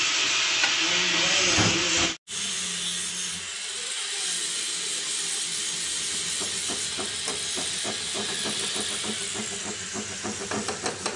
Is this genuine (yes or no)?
yes